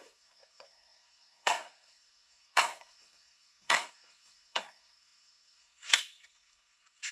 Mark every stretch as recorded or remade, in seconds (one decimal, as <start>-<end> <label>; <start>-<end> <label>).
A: 0.0-7.1 remade